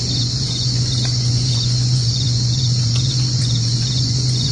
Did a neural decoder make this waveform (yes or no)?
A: yes